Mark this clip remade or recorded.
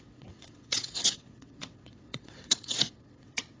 remade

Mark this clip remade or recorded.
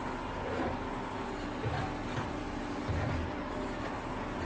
recorded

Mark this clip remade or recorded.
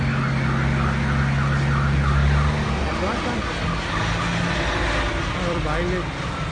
recorded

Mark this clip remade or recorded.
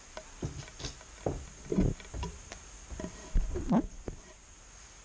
recorded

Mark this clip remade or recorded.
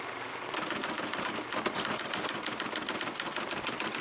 recorded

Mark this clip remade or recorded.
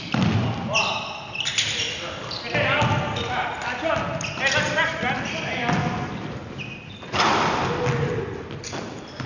recorded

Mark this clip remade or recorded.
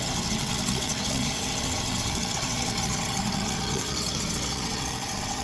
remade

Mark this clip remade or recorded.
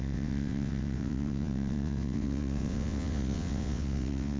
remade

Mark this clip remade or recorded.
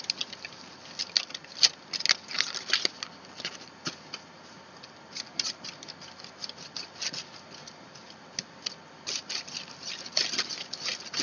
recorded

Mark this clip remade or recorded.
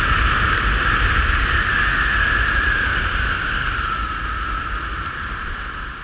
recorded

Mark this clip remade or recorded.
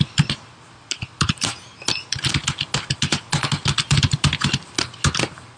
recorded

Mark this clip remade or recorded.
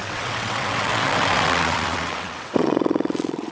remade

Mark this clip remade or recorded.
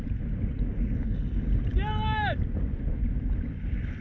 recorded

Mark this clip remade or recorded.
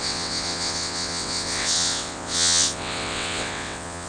remade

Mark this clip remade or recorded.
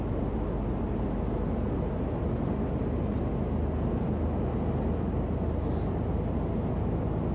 recorded